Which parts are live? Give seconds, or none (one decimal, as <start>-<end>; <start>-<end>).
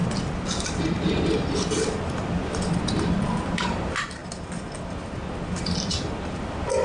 0.0-6.8